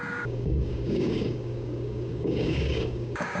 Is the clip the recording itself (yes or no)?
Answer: no